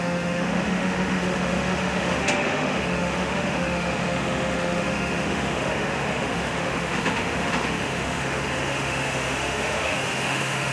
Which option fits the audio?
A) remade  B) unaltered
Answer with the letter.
A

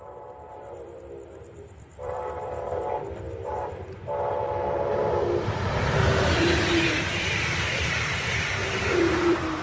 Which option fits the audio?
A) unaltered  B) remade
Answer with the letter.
B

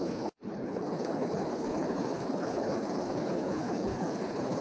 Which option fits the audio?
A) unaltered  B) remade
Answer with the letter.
B